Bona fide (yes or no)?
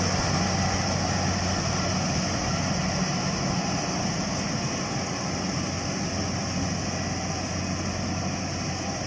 yes